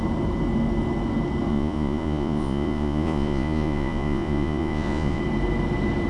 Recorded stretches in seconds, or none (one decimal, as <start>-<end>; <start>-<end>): 0.0-1.5; 5.2-6.1